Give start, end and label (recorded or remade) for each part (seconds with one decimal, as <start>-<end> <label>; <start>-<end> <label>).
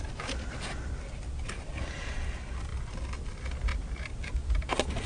0.0-5.1 recorded